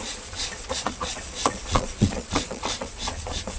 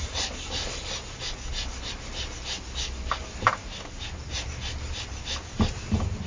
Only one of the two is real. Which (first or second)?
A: second